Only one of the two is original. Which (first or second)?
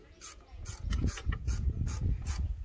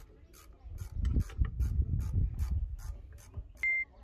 second